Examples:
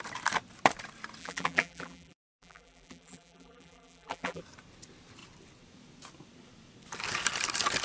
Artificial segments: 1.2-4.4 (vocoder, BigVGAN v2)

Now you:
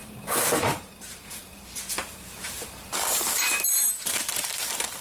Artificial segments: 0.0-1.4 (vocoder, BigVGAN v2); 2.0-5.0

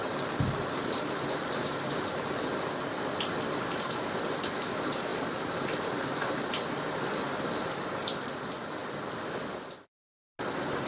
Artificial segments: 0.0-2.2 (vocoder, BigVGAN v2); 5.1-5.9